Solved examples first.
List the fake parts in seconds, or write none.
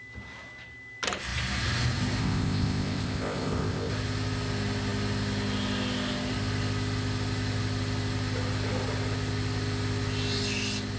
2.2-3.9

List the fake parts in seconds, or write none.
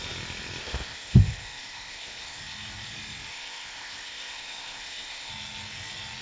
0.6-2.4; 3.3-5.3